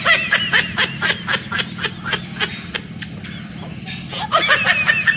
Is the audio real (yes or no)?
yes